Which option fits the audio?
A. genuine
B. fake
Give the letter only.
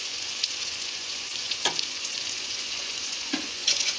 B